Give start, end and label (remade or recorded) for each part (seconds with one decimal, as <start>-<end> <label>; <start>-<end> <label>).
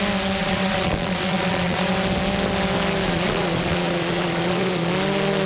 0.0-0.4 recorded; 0.4-1.9 remade; 1.9-3.0 recorded; 3.0-4.9 remade; 4.9-5.5 recorded